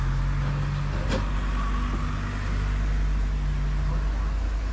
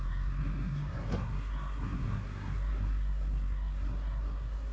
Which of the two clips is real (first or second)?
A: first